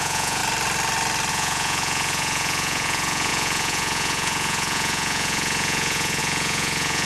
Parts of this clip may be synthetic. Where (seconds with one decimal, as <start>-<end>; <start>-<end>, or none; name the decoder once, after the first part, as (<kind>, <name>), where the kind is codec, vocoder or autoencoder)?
0.0-0.4 (vocoder, Vocos); 1.3-7.1